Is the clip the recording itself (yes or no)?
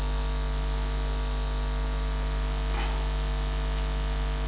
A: yes